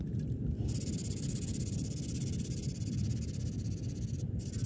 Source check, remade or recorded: remade